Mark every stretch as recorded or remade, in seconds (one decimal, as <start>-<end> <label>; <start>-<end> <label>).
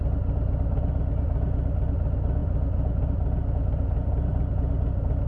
0.0-5.3 recorded